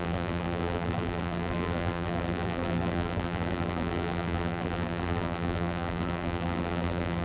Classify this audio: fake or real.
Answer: fake